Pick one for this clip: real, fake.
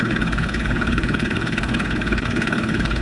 fake